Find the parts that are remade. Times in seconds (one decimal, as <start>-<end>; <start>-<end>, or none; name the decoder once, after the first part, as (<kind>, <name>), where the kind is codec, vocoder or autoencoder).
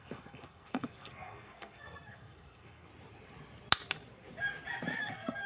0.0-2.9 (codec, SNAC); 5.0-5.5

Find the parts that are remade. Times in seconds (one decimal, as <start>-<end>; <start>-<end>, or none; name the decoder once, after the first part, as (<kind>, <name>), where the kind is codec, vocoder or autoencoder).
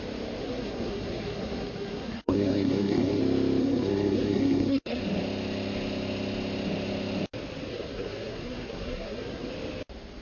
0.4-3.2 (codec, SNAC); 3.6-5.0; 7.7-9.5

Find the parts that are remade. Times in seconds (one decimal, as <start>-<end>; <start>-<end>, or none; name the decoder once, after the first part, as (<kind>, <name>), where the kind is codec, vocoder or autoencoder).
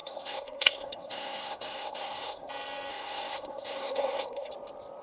0.0-2.5 (codec, SNAC); 2.9-4.5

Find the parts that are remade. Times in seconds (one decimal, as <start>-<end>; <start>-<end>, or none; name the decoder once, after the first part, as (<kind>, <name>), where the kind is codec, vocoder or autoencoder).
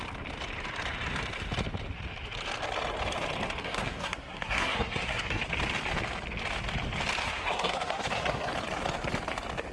3.6-5.4 (codec, SNAC); 7.2-8.5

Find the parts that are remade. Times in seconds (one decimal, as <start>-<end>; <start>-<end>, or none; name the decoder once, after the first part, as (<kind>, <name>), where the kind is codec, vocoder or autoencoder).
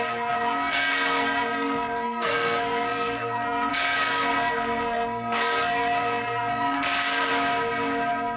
0.0-7.3 (codec, SNAC)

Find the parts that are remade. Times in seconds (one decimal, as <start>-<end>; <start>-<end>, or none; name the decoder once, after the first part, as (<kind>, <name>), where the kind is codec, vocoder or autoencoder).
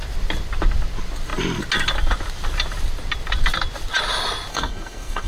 4.5-5.3 (codec, SNAC)